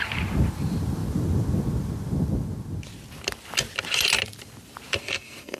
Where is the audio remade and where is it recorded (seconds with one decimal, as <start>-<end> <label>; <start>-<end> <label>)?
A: 0.0-5.0 recorded; 5.0-5.6 remade